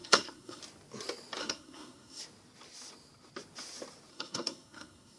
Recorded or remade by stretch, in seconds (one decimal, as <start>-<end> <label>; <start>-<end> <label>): 0.0-0.6 remade; 0.6-1.4 recorded; 1.4-2.2 remade; 2.2-4.1 recorded; 4.1-5.2 remade